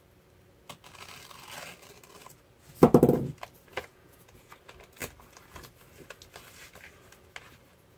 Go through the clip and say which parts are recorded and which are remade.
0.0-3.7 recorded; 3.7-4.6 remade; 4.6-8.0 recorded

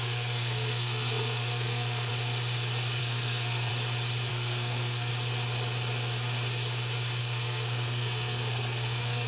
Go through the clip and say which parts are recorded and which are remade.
0.0-2.1 remade; 2.1-3.0 recorded; 3.0-3.7 remade; 3.7-4.3 recorded; 4.3-5.1 remade; 5.1-7.2 recorded; 7.2-9.3 remade